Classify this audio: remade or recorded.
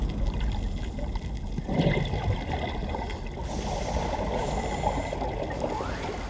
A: recorded